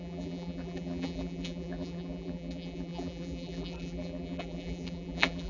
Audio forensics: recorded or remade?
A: remade